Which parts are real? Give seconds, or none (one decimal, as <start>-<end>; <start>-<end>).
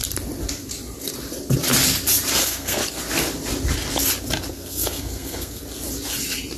0.0-2.4; 2.8-4.5; 5.6-6.6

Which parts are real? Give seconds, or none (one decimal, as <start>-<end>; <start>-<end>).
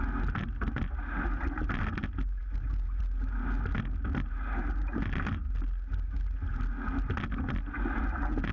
0.0-8.5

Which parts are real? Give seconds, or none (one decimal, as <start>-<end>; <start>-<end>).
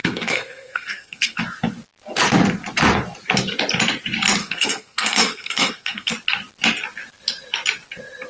1.4-4.4; 6.1-8.3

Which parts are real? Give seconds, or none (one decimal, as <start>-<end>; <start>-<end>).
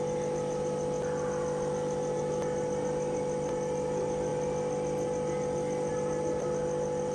0.0-7.1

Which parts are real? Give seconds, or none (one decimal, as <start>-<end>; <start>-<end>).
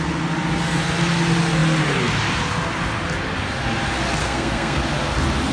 0.0-4.2; 4.8-5.5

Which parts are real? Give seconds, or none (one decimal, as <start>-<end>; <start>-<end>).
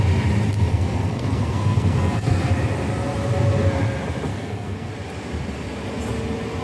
0.0-0.7; 2.5-4.3; 4.9-6.6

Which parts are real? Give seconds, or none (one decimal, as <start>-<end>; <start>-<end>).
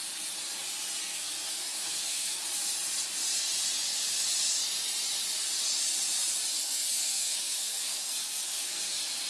0.0-1.0; 2.4-6.5; 8.9-9.3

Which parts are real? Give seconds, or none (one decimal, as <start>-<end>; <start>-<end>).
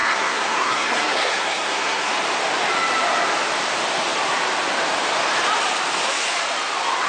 2.1-7.1